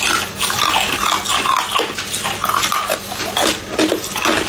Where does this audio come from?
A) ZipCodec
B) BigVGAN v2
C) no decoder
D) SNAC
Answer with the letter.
C